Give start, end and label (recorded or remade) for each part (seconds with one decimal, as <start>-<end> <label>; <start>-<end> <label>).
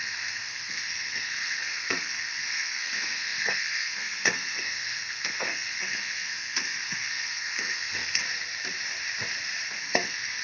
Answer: 0.0-8.2 remade; 8.2-9.8 recorded; 9.8-10.4 remade